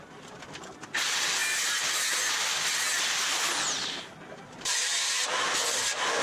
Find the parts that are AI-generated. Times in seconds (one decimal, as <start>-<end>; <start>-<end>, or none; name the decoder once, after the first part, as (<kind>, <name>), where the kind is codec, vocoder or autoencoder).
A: 1.4-2.6 (vocoder, BigVGAN v2)